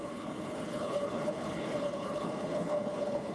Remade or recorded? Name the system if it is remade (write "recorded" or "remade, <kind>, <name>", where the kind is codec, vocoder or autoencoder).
remade, codec, HILCodec